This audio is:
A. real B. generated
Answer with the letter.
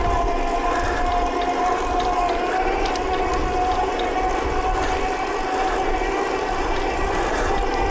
A